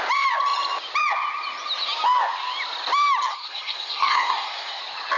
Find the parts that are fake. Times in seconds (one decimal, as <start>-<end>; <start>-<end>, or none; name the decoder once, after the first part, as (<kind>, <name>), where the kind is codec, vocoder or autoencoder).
3.3-4.8 (codec, SNAC)